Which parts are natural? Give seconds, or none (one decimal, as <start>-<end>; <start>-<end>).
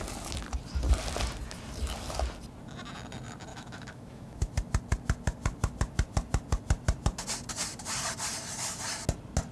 0.0-3.5; 4.5-9.5